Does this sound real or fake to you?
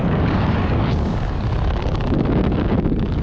fake